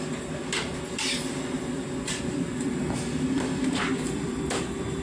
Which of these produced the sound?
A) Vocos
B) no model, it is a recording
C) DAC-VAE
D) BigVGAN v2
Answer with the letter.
D